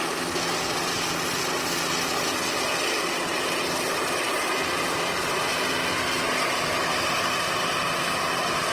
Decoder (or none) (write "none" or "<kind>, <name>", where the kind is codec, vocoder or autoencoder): none